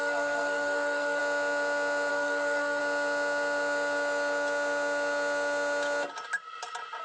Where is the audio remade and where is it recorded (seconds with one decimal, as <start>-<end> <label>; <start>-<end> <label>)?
0.0-1.2 remade; 1.2-2.1 recorded; 2.1-2.8 remade; 2.8-7.0 recorded